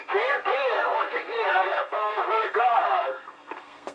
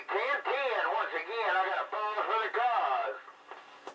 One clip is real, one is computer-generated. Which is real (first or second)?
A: second